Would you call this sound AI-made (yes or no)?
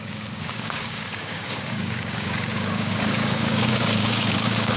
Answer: yes